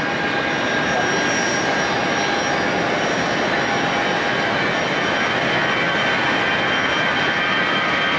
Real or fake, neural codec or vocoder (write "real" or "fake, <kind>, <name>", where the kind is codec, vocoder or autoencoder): real